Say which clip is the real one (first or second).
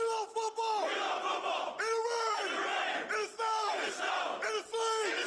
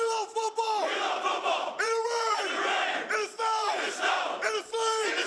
first